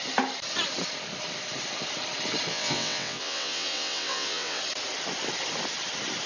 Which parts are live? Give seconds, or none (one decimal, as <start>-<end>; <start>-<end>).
0.0-2.5; 4.6-6.3